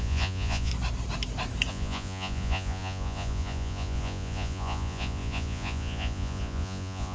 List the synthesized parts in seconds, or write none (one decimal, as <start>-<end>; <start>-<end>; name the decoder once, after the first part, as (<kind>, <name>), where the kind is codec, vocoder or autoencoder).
0.0-0.7 (vocoder, Vocos); 1.7-7.1